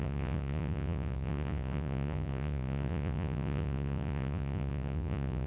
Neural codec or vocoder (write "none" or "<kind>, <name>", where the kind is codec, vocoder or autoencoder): vocoder, Vocos